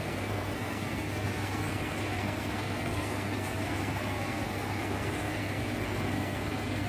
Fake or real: fake